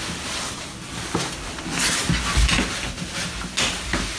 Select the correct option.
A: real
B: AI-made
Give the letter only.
A